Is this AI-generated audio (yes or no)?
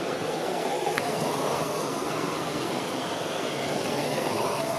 yes